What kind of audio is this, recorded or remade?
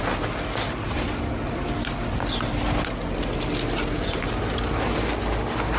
recorded